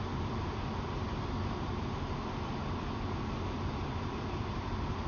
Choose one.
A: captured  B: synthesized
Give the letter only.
A